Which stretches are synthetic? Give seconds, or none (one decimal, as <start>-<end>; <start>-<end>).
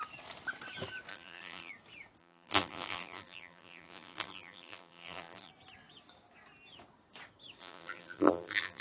1.1-1.7; 2.2-5.5; 7.6-8.8